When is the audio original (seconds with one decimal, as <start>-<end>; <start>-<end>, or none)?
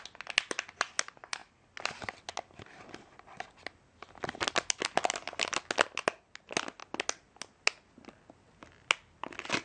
0.0-9.6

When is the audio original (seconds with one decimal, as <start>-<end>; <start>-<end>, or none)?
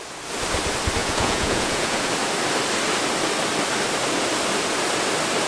0.0-1.0; 2.1-5.5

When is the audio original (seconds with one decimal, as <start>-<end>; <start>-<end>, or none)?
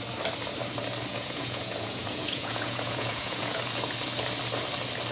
0.0-1.1; 3.6-5.1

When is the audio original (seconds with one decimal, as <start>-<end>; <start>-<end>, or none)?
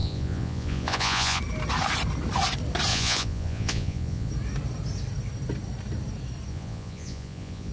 1.4-2.9; 4.3-6.5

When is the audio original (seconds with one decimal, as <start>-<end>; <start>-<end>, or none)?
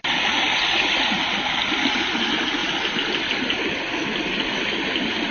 0.0-0.5; 1.3-5.3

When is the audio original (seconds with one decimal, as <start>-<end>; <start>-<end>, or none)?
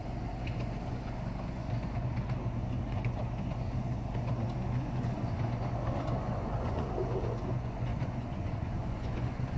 none